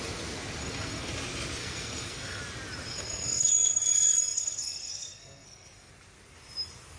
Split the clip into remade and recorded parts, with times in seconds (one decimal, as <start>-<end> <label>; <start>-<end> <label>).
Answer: 0.0-0.6 recorded; 0.6-1.1 remade; 1.1-1.6 recorded; 1.6-2.4 remade; 2.4-2.9 recorded; 2.9-5.9 remade; 5.9-7.0 recorded